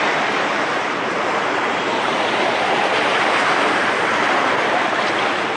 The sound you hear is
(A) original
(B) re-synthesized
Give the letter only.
B